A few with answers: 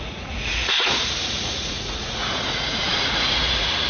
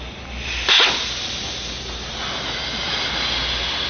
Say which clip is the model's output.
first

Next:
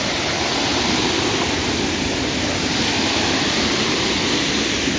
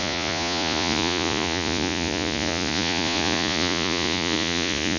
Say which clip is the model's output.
second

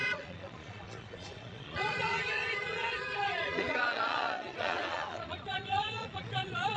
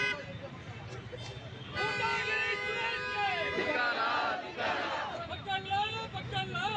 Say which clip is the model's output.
first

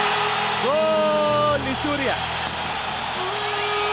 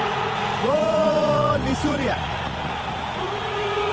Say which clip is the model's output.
second